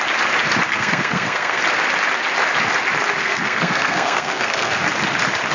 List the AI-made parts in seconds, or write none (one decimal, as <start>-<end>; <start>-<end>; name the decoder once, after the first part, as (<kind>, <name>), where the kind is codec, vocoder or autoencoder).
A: 0.7-1.6 (codec, SNAC); 3.2-4.8